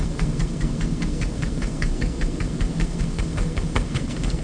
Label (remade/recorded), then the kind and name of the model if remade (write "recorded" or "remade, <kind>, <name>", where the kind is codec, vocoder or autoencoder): remade, codec, SNAC